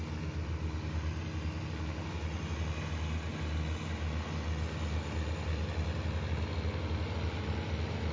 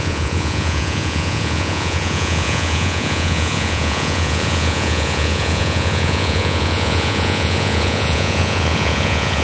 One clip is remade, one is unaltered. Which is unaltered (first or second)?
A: first